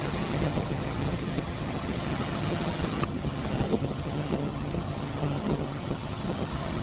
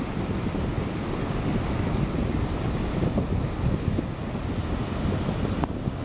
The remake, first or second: first